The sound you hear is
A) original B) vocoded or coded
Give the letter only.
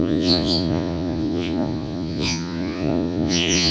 B